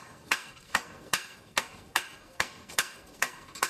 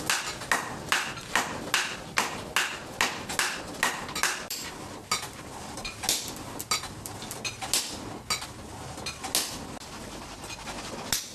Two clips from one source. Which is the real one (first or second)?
second